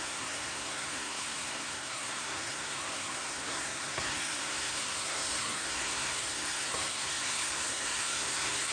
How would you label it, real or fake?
fake